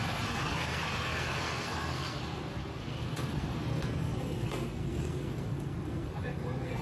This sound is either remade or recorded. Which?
remade